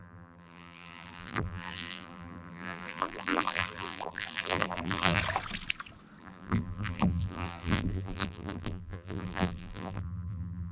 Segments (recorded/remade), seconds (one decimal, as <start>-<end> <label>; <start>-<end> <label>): 0.0-5.2 remade; 5.2-6.2 recorded; 6.2-10.7 remade